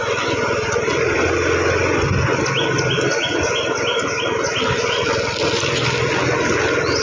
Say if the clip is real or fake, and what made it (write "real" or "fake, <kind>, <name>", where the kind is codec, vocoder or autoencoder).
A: real